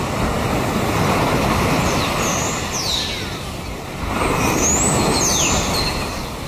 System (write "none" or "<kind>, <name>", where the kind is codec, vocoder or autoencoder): none